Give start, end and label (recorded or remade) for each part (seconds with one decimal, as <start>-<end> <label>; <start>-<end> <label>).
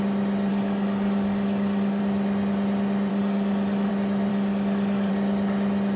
0.0-0.5 recorded; 0.5-2.0 remade; 2.0-3.1 recorded; 3.1-3.9 remade; 3.9-4.3 recorded; 4.3-5.1 remade; 5.1-6.0 recorded